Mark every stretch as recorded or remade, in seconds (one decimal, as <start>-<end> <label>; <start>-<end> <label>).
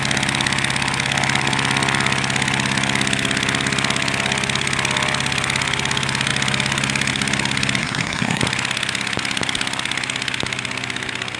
0.0-7.8 recorded; 7.8-8.4 remade; 8.4-11.4 recorded